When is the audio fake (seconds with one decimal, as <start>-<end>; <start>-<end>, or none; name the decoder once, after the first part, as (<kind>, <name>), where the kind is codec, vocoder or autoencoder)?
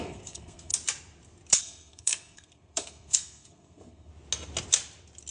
0.0-0.7 (codec, SNAC); 1.6-4.1